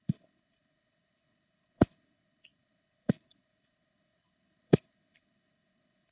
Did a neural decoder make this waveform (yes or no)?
yes